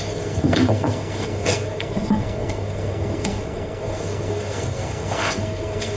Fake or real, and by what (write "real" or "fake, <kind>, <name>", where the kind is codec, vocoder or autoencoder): fake, codec, SNAC